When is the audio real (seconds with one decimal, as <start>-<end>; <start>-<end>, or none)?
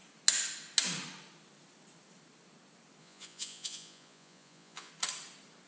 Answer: 0.0-3.0; 4.9-5.7